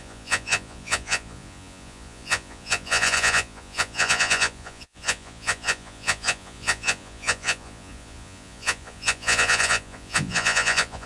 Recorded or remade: remade